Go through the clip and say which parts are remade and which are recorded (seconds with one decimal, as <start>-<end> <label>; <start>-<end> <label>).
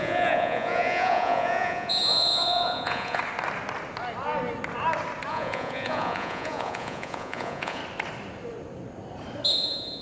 0.0-3.2 remade; 3.2-5.3 recorded; 5.3-7.8 remade; 7.8-9.5 recorded; 9.5-10.0 remade